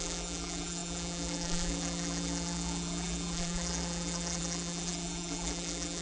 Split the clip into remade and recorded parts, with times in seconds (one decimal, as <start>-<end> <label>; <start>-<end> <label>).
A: 0.0-6.0 remade